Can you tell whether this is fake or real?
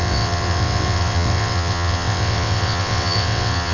fake